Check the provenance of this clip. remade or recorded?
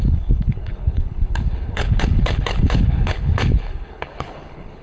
remade